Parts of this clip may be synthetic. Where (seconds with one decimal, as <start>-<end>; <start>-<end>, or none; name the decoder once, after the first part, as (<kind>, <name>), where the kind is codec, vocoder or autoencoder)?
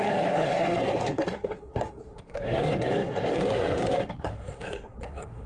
0.0-5.5 (codec, SNAC)